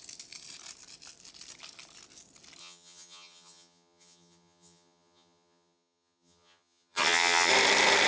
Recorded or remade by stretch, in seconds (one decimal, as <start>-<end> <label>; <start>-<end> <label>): 0.0-2.6 recorded; 2.6-7.5 remade; 7.5-8.1 recorded